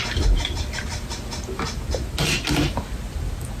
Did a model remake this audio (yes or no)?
no